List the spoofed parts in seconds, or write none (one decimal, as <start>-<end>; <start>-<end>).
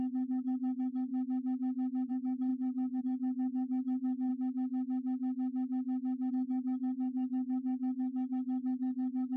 0.0-1.1; 2.1-4.3; 6.3-9.4